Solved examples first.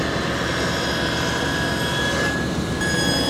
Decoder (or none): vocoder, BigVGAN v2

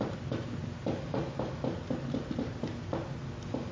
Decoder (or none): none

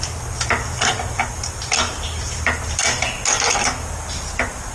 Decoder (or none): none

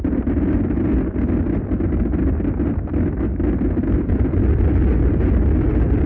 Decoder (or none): none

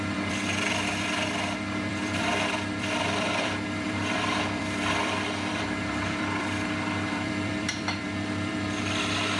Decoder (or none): vocoder, BigVGAN v2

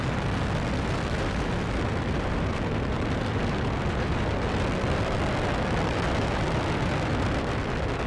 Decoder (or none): vocoder, BigVGAN v2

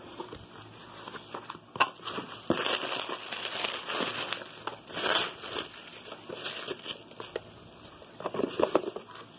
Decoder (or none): none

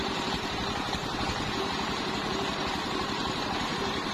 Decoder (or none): vocoder, BigVGAN v2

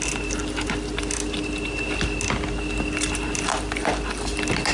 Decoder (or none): none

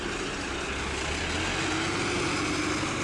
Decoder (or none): none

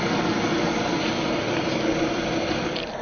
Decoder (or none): none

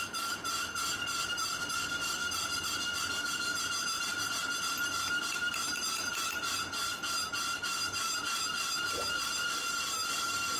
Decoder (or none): none